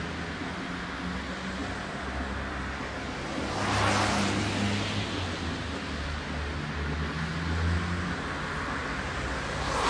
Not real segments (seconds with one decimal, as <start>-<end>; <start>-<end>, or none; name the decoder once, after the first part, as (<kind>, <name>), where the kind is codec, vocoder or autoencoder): none